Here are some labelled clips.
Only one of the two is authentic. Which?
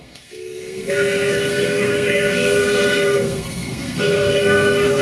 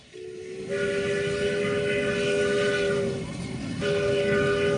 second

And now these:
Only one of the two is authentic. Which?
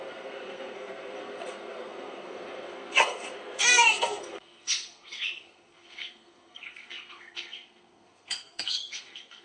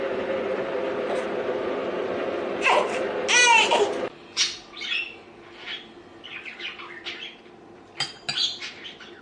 second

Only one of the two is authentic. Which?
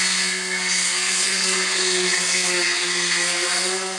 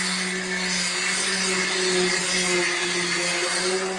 second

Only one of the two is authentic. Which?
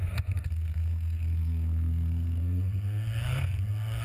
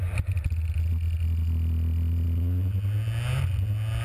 second